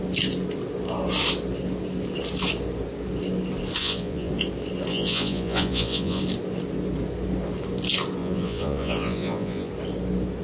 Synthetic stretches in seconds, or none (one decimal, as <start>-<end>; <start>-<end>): 3.8-4.3; 4.9-6.2; 8.2-9.7